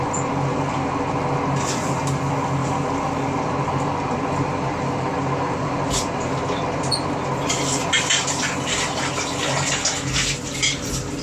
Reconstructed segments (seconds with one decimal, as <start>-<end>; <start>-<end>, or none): 2.6-6.9